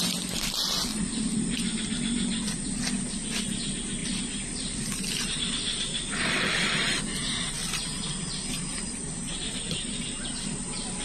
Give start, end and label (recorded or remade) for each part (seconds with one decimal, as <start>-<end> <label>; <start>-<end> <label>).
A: 0.0-0.9 recorded; 0.9-2.8 remade; 2.8-4.0 recorded; 4.0-6.5 remade; 6.5-7.6 recorded; 7.6-9.5 remade; 9.5-11.0 recorded